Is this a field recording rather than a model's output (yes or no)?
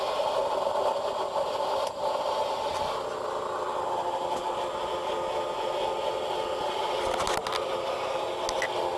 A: yes